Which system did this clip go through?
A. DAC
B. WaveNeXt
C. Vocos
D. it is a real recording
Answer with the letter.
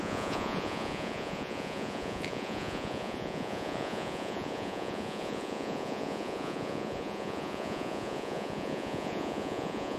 C